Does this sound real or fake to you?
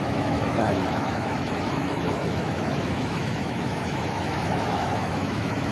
fake